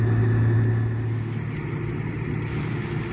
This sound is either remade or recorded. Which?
recorded